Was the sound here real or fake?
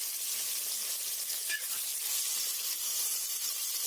real